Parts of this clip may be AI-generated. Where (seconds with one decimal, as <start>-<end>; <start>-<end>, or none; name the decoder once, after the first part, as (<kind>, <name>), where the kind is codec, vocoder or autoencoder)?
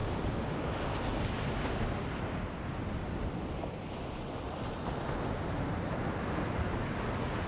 0.0-0.8 (vocoder, BigVGAN v2)